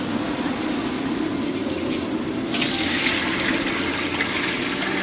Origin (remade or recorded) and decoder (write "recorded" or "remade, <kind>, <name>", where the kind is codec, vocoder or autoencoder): recorded